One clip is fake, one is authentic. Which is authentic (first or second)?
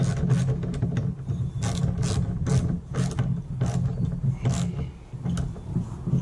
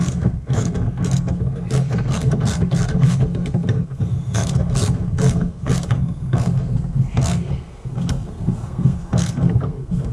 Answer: first